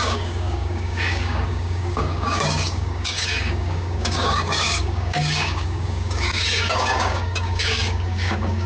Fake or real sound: fake